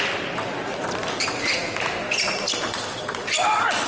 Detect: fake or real real